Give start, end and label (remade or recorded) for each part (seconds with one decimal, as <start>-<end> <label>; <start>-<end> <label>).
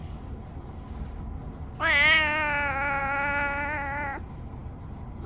0.0-5.3 recorded